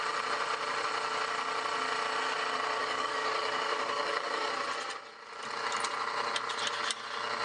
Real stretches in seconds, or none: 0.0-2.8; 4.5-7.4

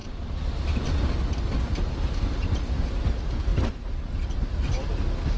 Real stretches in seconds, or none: 0.0-5.4